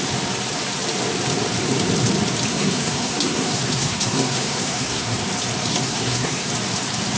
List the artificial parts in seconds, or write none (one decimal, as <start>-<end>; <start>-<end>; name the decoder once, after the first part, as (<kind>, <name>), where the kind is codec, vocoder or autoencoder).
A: 2.5-5.2 (codec, SNAC); 5.7-6.5